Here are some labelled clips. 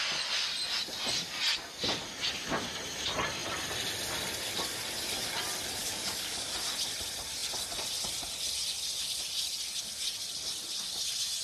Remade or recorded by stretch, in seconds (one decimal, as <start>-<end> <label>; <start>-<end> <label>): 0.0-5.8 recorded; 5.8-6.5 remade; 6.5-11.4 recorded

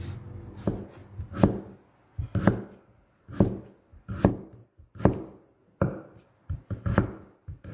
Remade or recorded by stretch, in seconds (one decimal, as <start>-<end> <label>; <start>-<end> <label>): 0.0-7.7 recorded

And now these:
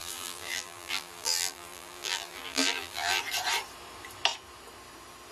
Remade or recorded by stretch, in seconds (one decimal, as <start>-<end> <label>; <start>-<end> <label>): 0.0-3.2 remade; 3.2-5.3 recorded